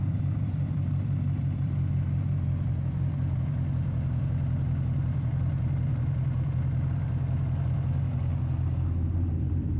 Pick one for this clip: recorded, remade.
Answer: remade